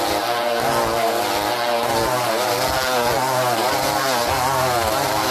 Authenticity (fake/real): real